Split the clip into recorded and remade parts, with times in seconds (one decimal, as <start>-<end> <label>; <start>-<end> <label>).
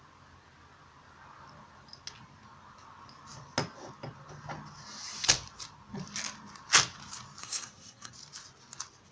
0.0-7.4 recorded; 7.4-8.1 remade; 8.1-9.1 recorded